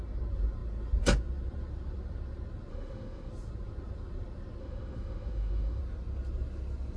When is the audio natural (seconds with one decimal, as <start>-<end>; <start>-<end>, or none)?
0.0-2.7; 3.3-4.6; 5.8-7.0